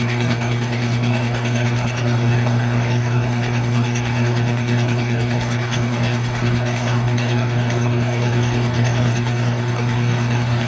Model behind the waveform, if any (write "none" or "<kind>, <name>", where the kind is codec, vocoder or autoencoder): codec, DAC